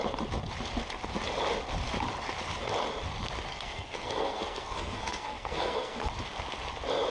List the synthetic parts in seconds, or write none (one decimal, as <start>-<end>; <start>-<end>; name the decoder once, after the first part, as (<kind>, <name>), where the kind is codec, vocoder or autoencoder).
3.5-6.1 (codec, SNAC)